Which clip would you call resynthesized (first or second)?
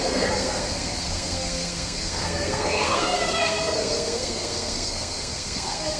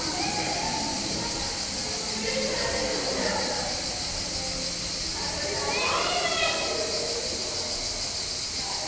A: first